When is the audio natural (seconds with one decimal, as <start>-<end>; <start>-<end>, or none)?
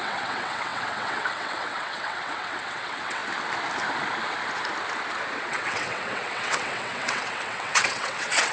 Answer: 3.2-5.4